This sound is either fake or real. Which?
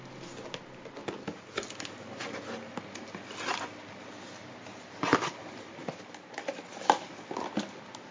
real